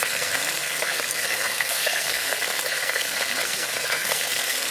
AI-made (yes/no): yes